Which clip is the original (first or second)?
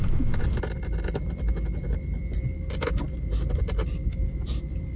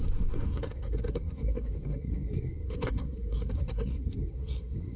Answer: first